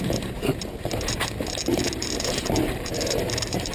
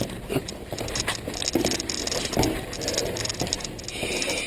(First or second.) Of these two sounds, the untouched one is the second